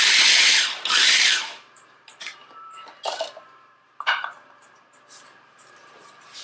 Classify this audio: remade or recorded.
remade